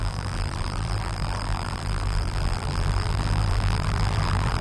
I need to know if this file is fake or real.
fake